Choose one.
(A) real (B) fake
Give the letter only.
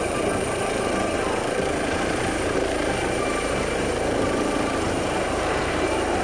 B